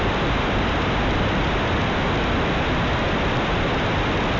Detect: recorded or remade recorded